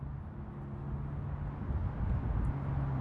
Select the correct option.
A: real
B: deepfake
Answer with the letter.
A